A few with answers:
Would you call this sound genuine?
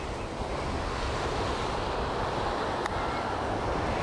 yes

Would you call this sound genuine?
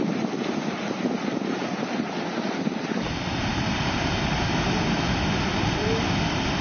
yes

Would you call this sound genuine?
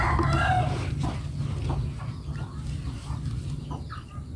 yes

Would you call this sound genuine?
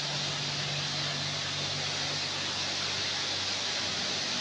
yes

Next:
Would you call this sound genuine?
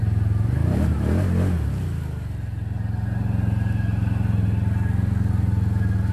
yes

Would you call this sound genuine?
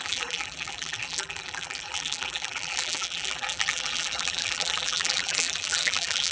no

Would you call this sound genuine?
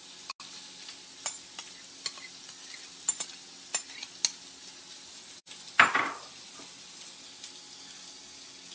yes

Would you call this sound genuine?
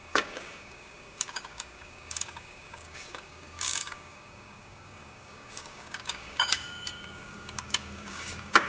no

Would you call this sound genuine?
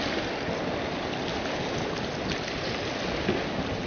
yes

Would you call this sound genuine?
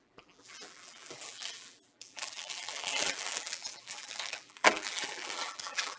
no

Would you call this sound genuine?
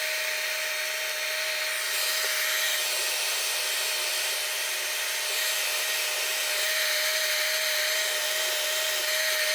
yes